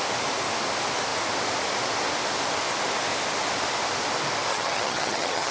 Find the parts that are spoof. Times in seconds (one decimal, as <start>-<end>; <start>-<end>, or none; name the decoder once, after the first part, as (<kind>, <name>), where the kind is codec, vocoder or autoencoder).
4.5-5.5 (vocoder, HiFi-GAN)